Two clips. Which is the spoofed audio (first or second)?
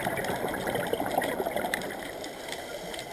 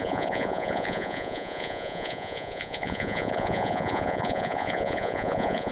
second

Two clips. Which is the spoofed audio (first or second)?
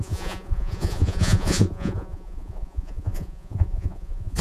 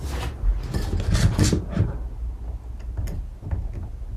first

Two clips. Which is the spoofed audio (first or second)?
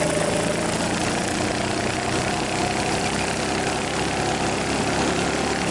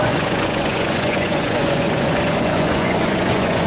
second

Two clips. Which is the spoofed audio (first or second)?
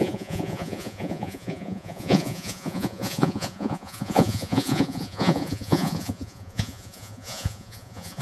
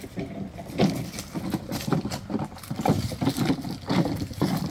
first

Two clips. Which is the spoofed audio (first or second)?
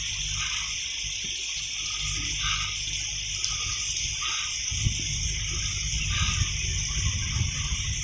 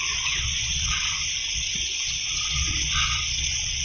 second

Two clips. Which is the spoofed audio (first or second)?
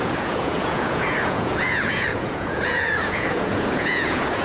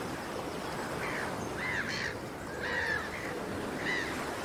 first